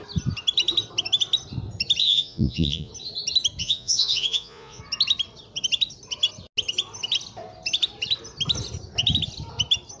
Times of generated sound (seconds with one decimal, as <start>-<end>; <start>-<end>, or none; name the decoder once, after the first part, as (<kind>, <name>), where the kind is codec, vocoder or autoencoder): 2.0-2.9 (vocoder, Vocos); 3.6-4.8